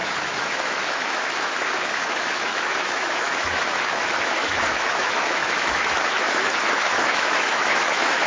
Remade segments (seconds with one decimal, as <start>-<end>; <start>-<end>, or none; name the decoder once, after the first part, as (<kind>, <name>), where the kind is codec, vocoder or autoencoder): 0.0-8.3 (autoencoder, DAC-VAE)